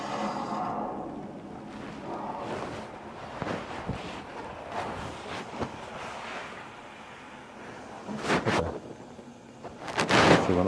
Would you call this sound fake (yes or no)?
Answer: no